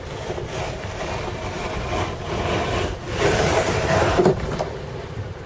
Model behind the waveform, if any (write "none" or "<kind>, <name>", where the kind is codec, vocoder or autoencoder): none